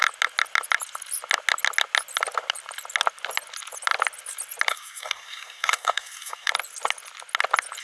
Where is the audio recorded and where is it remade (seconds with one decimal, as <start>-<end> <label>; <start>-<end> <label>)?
0.0-4.7 recorded; 4.7-6.5 remade; 6.5-7.8 recorded